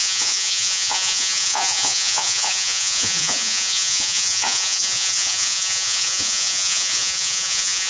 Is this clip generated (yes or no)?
yes